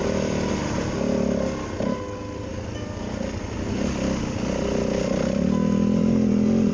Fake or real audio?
real